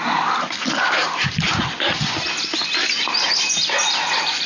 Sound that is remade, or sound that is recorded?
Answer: recorded